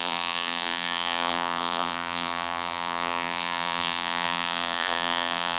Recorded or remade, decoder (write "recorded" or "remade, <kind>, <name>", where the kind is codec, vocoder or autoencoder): remade, vocoder, BigVGAN v2